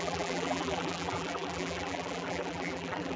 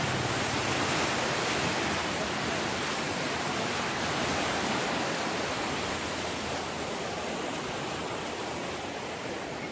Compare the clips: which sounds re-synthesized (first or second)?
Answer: first